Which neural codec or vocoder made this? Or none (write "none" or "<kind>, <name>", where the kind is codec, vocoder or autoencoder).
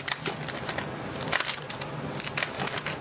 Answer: none